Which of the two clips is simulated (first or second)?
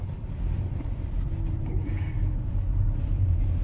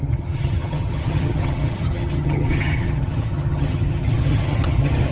second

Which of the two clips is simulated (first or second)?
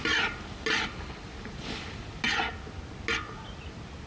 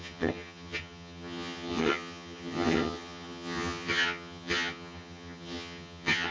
second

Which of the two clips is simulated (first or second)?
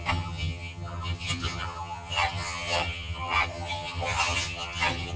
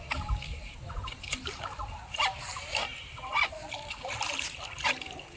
first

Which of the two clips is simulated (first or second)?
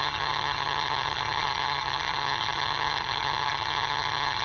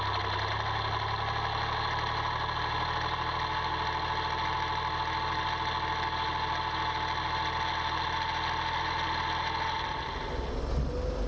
first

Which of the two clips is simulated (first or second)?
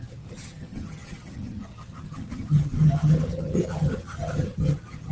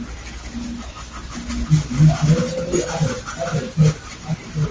first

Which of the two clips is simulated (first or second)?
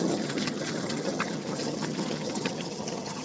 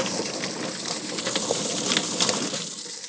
first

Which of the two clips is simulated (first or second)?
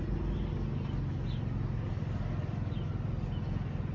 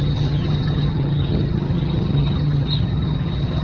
second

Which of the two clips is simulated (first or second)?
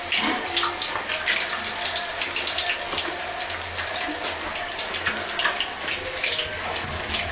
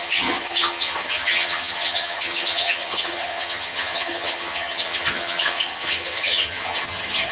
second